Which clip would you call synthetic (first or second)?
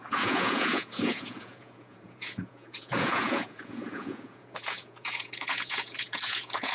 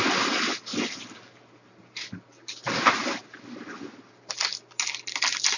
first